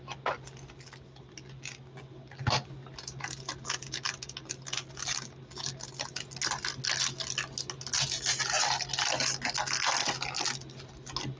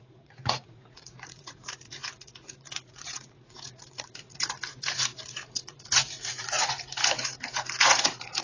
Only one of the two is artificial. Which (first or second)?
second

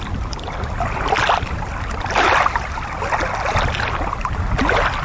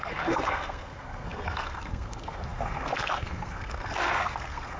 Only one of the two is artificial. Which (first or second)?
second